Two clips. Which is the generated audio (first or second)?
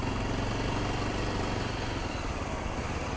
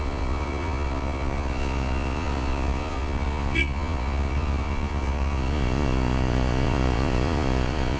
second